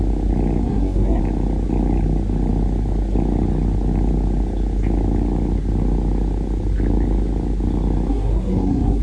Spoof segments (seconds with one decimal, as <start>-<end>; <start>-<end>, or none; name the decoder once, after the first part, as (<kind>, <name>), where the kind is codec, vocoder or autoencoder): 0.6-1.2 (codec, SNAC); 8.1-9.0